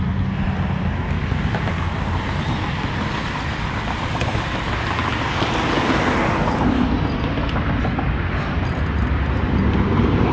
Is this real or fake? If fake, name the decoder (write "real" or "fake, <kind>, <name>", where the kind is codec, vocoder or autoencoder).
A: real